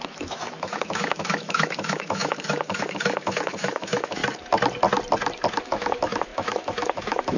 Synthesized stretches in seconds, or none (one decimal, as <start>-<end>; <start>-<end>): 0.0-4.2; 5.6-7.4